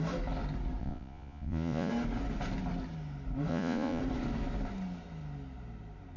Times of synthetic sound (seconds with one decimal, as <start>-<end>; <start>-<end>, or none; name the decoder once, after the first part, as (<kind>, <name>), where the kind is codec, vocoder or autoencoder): 0.8-1.9 (vocoder, Vocos); 3.5-4.0